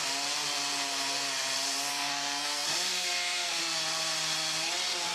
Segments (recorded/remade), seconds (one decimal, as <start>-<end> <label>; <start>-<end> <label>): 0.0-1.9 recorded; 1.9-3.6 remade; 3.6-5.1 recorded